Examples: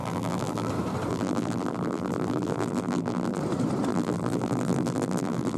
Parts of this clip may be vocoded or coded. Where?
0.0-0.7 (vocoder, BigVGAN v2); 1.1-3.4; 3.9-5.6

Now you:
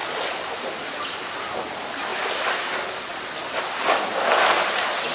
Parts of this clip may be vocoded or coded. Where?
none